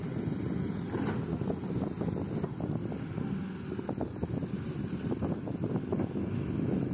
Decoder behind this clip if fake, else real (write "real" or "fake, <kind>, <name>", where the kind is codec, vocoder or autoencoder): real